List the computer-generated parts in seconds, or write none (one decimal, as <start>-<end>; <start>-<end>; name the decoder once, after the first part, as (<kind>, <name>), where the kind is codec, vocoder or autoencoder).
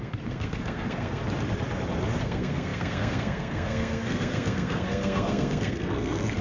0.0-1.2 (codec, SNAC); 2.2-6.4